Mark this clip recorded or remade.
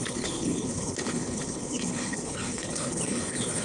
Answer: remade